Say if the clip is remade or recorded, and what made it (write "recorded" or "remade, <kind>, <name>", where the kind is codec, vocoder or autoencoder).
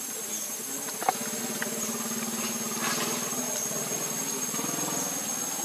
recorded